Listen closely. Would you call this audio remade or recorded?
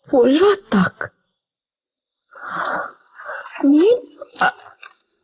recorded